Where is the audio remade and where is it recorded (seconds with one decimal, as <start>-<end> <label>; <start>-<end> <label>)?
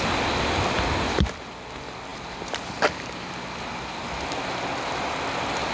0.0-5.7 recorded